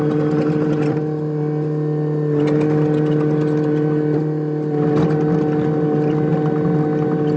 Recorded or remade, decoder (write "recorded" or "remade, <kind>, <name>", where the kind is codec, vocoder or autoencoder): recorded